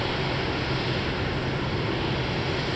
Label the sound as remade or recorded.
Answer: recorded